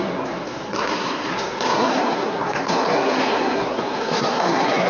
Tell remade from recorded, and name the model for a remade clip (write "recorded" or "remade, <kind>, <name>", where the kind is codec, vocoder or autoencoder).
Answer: remade, codec, SNAC